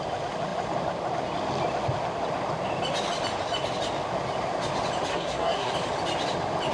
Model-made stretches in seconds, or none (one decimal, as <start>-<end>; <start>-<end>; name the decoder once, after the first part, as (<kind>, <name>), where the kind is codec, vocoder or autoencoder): 5.1-5.7 (codec, SNAC)